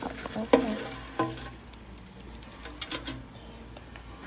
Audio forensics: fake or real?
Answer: real